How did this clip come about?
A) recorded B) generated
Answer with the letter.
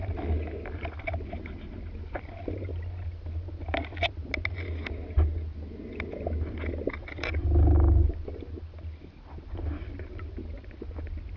A